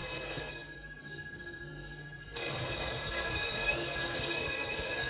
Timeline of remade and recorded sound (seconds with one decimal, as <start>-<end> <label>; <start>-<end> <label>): 0.0-5.1 remade

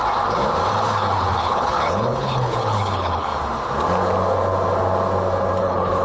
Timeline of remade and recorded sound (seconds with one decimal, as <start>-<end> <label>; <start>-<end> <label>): 0.0-0.7 recorded; 0.7-3.3 remade; 3.3-5.6 recorded; 5.6-6.0 remade